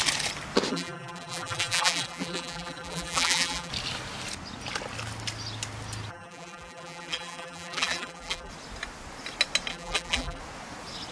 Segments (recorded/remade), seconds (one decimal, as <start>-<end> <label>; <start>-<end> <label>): 0.0-0.7 recorded; 0.7-3.7 remade; 3.7-6.1 recorded; 6.1-8.5 remade; 8.5-9.7 recorded; 9.7-10.4 remade; 10.4-11.1 recorded